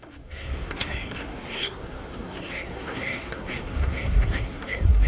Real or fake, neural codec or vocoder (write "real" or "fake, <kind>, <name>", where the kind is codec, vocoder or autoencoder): fake, codec, SNAC